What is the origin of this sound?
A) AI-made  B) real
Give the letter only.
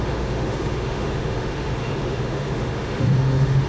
A